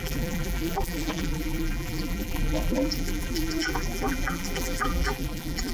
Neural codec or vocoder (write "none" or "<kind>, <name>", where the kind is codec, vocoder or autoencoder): vocoder, BigVGAN v2